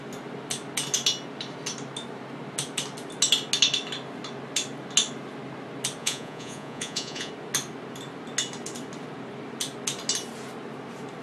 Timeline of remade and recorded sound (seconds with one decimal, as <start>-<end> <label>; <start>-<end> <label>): 0.0-6.0 recorded; 6.0-7.3 remade; 7.3-11.2 recorded